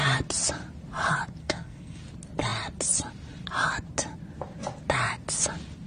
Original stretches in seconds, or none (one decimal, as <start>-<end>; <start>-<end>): 0.0-1.4; 2.0-5.9